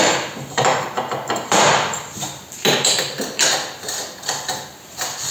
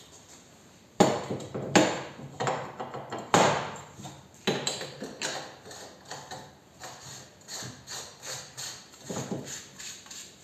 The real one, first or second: second